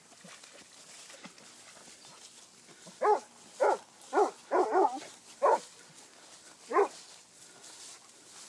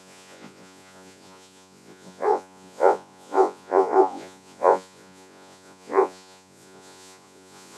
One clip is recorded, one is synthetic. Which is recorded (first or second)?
first